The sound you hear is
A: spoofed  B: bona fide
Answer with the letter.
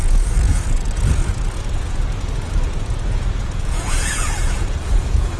A